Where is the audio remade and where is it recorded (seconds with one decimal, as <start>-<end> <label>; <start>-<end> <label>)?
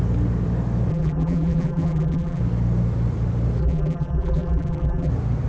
0.0-0.9 recorded; 0.9-2.4 remade; 2.4-3.6 recorded; 3.6-5.1 remade; 5.1-5.5 recorded